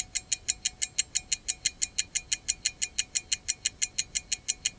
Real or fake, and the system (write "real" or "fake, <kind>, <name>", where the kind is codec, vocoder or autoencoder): real